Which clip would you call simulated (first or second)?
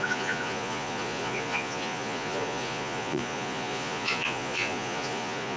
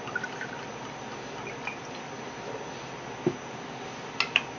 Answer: first